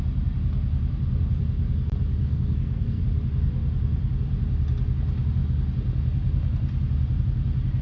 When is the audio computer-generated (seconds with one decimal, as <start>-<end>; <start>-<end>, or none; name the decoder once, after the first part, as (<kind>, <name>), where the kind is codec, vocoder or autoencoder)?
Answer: 2.2-3.0 (codec, SNAC)